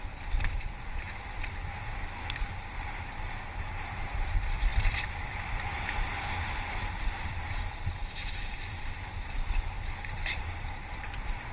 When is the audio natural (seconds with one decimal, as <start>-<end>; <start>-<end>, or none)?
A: none